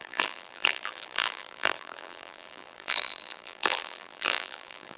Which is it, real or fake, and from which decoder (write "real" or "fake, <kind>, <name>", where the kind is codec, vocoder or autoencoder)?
fake, vocoder, BigVGAN v2